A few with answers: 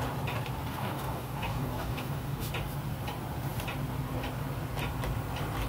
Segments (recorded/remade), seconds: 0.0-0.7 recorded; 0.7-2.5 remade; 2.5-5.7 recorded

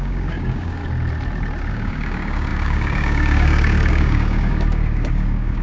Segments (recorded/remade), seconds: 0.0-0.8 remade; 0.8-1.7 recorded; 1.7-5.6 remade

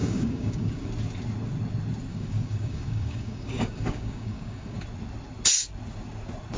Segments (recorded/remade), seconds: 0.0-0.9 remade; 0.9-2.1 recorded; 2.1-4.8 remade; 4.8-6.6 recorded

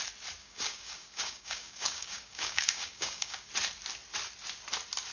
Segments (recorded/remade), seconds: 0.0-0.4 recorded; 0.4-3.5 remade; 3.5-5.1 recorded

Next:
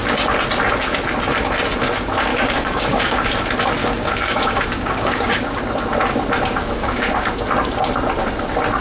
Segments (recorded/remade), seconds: 0.0-2.3 recorded; 2.3-3.3 remade; 3.3-3.8 recorded; 3.8-5.6 remade; 5.6-6.6 recorded; 6.6-7.3 remade; 7.3-8.8 recorded